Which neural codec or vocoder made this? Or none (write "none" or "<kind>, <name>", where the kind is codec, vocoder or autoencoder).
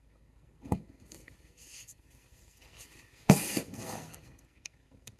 codec, SNAC